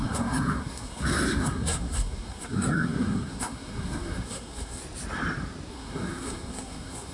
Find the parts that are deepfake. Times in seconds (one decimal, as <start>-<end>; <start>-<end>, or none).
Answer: 0.0-4.8; 5.7-7.1